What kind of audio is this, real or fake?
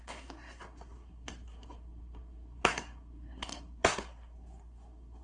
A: fake